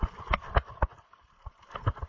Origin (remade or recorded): recorded